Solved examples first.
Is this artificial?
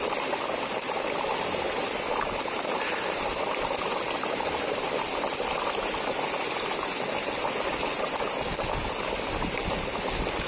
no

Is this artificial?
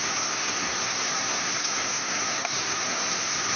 yes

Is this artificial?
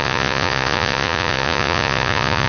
yes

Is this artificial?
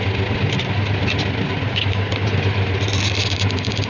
no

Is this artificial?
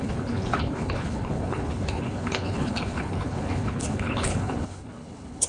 yes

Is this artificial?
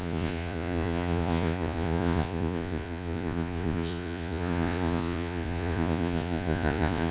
yes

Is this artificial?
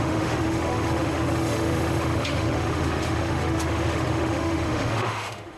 yes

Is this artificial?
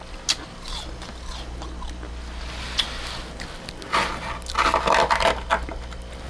no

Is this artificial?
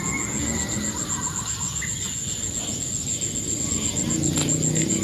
no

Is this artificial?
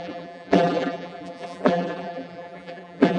yes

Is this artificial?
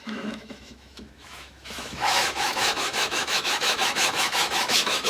yes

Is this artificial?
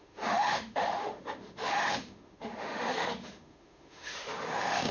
yes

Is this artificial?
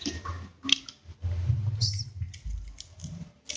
no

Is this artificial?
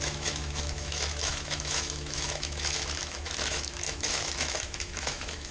yes